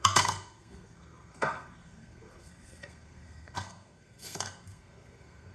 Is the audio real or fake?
fake